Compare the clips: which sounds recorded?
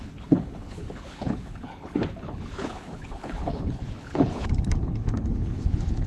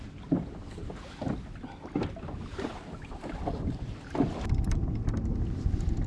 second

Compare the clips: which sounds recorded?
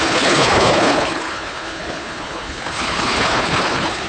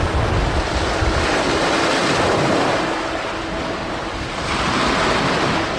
second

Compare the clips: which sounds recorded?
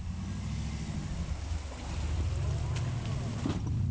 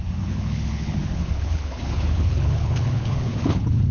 first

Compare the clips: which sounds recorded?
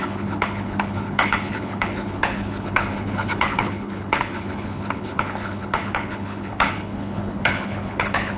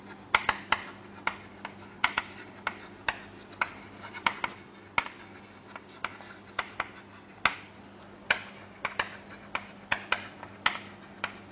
second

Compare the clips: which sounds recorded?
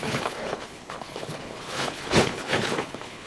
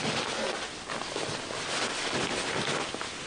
second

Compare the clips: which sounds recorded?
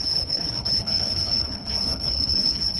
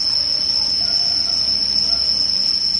second